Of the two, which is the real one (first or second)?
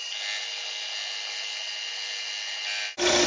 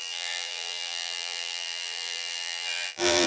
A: first